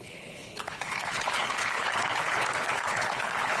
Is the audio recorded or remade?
remade